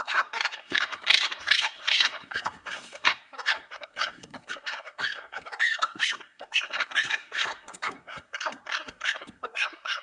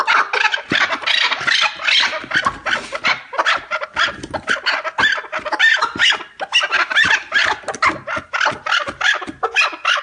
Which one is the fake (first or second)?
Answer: first